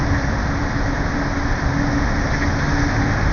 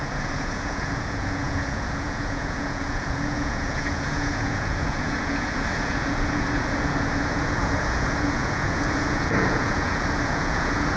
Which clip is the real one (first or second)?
first